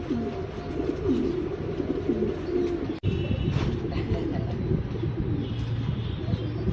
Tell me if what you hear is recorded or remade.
recorded